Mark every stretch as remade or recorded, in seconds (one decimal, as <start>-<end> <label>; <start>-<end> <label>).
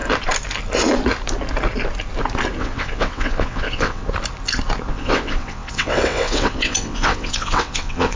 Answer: 0.0-2.6 recorded; 2.6-4.0 remade; 4.0-4.9 recorded; 4.9-8.2 remade